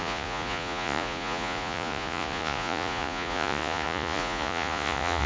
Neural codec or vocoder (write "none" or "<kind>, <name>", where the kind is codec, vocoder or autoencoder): vocoder, Vocos